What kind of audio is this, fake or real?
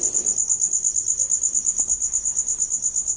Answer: real